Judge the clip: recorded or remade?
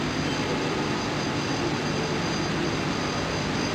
recorded